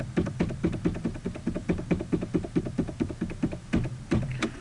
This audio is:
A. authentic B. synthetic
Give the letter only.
B